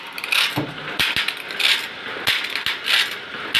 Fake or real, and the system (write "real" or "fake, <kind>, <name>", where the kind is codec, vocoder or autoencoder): real